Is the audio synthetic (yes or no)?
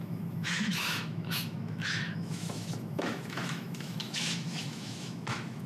yes